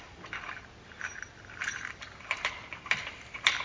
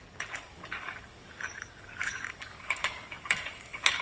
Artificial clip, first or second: second